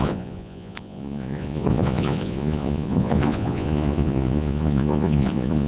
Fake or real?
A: fake